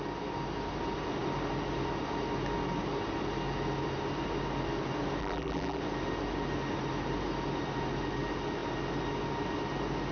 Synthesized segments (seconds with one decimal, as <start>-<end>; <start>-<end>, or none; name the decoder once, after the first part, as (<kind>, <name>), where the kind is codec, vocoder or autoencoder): 5.2-5.8 (vocoder, BigVGAN v2)